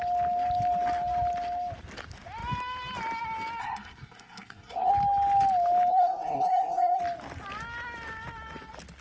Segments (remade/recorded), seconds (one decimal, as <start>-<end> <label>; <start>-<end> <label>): 0.0-3.6 recorded; 3.6-4.9 remade; 4.9-5.9 recorded; 5.9-7.0 remade; 7.0-9.0 recorded